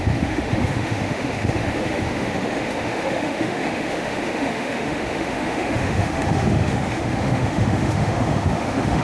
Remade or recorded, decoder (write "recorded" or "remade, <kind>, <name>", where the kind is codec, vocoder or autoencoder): remade, autoencoder, DAC-VAE